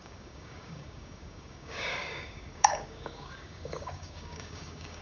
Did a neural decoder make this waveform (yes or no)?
yes